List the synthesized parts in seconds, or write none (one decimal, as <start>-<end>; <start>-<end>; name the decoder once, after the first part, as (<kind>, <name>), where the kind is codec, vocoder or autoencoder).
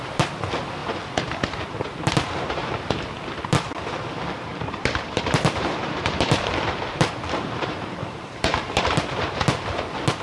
4.5-9.0 (vocoder, BigVGAN v2)